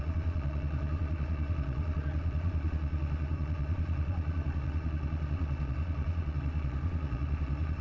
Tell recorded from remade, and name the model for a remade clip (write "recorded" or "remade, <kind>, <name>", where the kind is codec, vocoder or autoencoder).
remade, vocoder, Vocos